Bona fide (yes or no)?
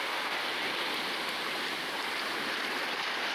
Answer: yes